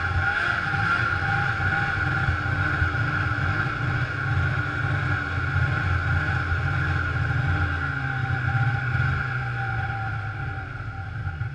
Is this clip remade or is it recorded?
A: recorded